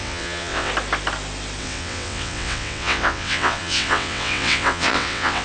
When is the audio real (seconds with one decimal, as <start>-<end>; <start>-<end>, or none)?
0.7-1.6